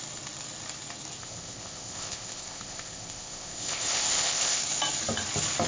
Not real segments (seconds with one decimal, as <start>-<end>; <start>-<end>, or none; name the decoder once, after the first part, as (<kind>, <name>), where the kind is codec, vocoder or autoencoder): 1.2-4.6 (codec, ZipCodec)